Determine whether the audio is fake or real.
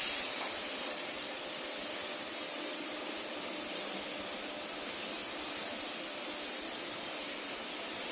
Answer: fake